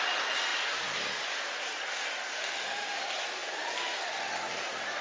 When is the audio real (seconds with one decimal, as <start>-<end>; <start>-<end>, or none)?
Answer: 0.0-2.4; 3.0-5.0